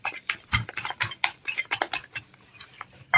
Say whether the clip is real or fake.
fake